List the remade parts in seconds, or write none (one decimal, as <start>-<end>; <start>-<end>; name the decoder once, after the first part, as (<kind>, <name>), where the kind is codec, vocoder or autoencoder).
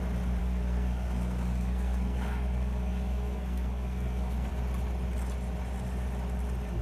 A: 0.4-4.5 (codec, SNAC)